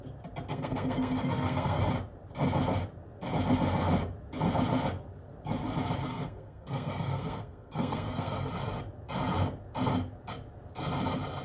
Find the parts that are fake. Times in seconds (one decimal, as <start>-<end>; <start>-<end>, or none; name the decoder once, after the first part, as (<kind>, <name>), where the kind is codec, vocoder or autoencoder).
0.5-1.8 (codec, SNAC); 6.1-8.5